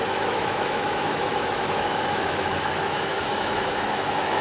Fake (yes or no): yes